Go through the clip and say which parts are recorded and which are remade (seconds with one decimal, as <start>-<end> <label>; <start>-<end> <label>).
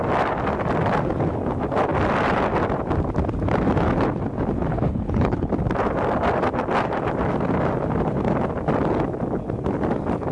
0.0-4.7 recorded; 4.7-5.5 remade; 5.5-10.3 recorded